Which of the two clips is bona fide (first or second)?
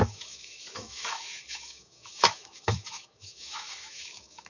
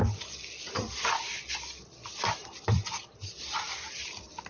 second